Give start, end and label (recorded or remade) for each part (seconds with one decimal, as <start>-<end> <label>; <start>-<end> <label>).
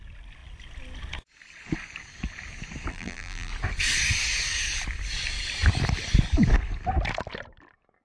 0.0-2.9 recorded; 2.9-3.5 remade; 3.5-8.0 recorded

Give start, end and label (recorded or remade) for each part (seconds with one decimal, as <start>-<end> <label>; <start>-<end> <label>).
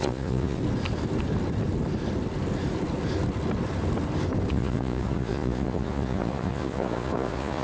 0.0-0.6 remade; 0.6-4.5 recorded; 4.5-7.6 remade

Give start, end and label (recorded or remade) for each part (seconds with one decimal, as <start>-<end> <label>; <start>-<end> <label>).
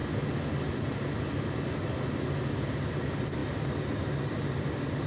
0.0-5.1 recorded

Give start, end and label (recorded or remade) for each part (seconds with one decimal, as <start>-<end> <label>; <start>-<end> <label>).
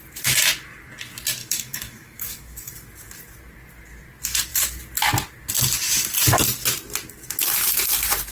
0.0-1.4 recorded; 1.4-2.7 remade; 2.7-8.3 recorded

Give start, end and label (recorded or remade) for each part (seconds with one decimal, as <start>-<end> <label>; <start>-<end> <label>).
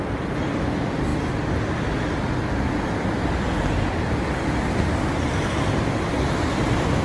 0.0-7.0 recorded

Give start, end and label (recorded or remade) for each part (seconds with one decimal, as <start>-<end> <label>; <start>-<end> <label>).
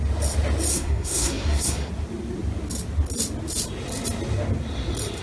0.0-0.7 recorded; 0.7-1.9 remade; 1.9-5.2 recorded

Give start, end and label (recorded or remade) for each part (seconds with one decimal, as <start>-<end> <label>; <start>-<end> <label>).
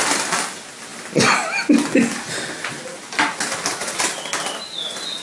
0.0-5.2 recorded